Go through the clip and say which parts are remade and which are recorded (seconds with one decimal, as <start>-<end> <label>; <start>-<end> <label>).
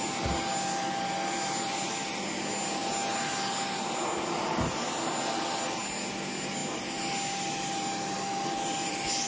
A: 0.0-9.3 recorded